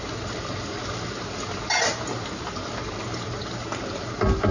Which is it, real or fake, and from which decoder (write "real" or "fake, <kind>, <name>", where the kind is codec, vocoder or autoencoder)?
real